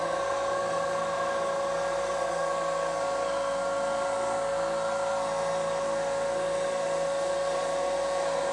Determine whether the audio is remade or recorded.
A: remade